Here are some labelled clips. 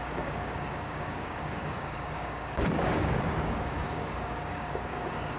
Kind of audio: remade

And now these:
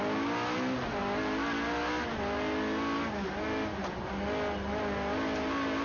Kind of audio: recorded